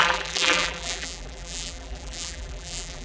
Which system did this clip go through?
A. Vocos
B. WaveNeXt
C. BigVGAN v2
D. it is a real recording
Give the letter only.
C